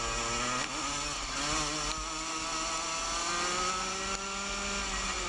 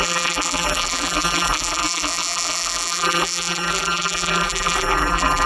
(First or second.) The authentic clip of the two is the first